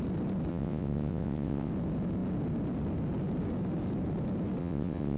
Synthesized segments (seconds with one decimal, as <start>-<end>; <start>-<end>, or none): 0.5-1.7; 4.6-5.2